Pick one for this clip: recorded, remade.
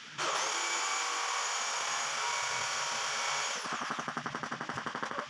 recorded